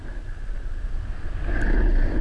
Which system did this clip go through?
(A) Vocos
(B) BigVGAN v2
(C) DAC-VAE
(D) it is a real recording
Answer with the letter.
D